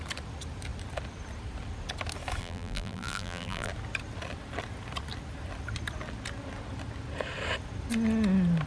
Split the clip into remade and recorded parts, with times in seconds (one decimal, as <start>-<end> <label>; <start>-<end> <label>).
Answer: 0.0-2.4 recorded; 2.4-3.7 remade; 3.7-8.7 recorded